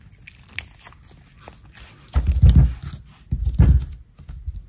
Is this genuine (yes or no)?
yes